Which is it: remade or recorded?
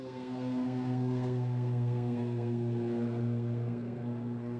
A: remade